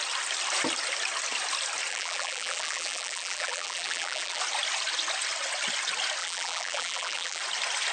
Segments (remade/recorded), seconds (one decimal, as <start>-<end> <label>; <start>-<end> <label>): 0.0-1.9 recorded; 1.9-4.4 remade; 4.4-6.2 recorded; 6.2-7.4 remade; 7.4-7.9 recorded